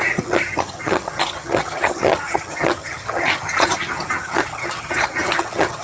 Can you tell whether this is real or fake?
fake